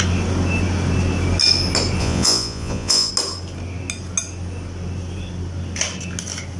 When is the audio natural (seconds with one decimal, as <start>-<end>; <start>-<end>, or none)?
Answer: 0.0-2.0; 3.1-6.6